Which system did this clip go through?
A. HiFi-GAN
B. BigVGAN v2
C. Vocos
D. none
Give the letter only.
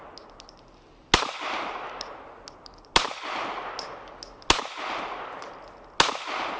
D